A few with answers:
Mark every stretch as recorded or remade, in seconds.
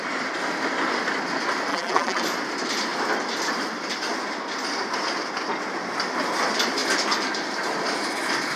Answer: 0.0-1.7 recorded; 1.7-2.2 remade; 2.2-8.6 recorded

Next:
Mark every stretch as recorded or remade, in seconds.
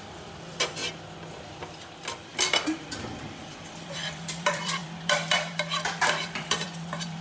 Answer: 0.0-0.8 remade; 0.8-1.6 recorded; 1.6-7.2 remade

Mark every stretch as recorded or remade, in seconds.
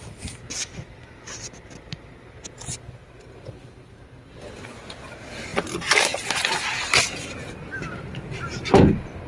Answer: 0.0-9.3 recorded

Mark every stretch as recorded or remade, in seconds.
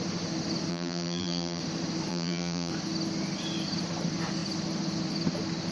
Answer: 0.0-0.7 recorded; 0.7-1.6 remade; 1.6-2.1 recorded; 2.1-2.7 remade; 2.7-5.7 recorded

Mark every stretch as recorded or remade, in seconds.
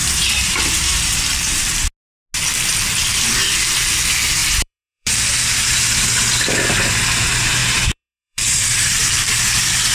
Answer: 0.0-1.8 remade; 1.8-4.4 recorded; 4.4-5.8 remade; 5.8-7.6 recorded; 7.6-9.3 remade; 9.3-9.9 recorded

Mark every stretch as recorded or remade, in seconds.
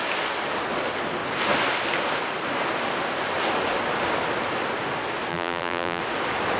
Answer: 0.0-5.3 recorded; 5.3-6.0 remade; 6.0-6.6 recorded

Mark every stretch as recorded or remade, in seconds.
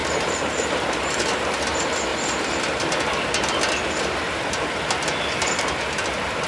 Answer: 0.0-1.4 remade; 1.4-2.1 recorded; 2.1-2.9 remade; 2.9-6.5 recorded